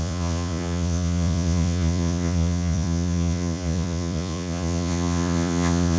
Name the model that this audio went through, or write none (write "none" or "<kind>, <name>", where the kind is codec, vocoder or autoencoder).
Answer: vocoder, Vocos